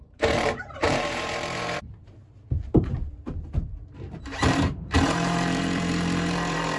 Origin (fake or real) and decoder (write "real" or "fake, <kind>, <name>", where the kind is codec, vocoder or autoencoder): fake, vocoder, BigVGAN v2